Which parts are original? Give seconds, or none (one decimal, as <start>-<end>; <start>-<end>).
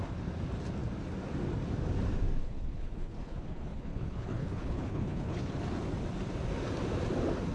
0.0-2.4; 5.5-7.5